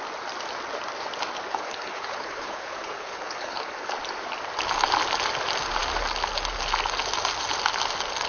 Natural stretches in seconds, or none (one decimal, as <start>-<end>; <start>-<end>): 0.0-1.5; 4.0-8.3